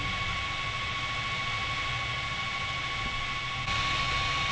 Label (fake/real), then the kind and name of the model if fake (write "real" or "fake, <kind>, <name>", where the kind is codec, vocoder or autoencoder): real